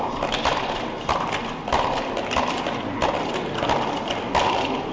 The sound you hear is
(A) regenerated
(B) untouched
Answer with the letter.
B